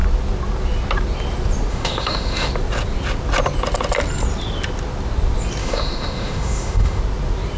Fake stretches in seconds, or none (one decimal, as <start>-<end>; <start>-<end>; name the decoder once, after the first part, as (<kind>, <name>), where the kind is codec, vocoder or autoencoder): 1.7-2.5 (autoencoder, DAC-VAE); 5.6-7.0